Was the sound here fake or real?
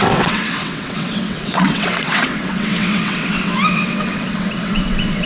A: fake